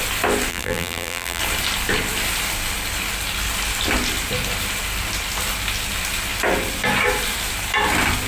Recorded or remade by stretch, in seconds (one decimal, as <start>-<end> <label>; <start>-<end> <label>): 0.0-0.5 recorded; 0.5-1.4 remade; 1.4-8.3 recorded